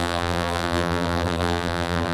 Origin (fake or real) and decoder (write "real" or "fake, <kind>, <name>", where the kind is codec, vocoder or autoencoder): fake, vocoder, BigVGAN v2